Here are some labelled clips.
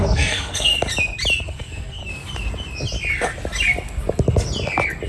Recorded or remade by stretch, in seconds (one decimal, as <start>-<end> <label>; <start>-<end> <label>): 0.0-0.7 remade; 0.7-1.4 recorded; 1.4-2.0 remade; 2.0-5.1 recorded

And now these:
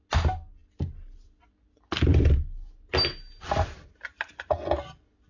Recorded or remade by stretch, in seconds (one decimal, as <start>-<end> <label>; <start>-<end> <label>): 0.0-5.3 recorded

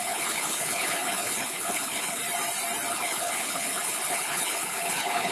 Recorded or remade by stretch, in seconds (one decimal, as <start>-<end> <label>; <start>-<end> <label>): 0.0-2.2 remade; 2.2-2.9 recorded; 2.9-5.3 remade